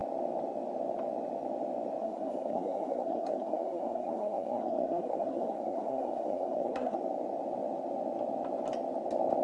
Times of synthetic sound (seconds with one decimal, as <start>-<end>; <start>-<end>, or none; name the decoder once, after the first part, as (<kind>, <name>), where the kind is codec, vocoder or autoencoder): 2.0-7.0 (codec, SNAC)